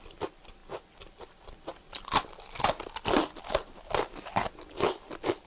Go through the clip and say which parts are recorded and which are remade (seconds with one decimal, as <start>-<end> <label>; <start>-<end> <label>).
0.0-5.5 recorded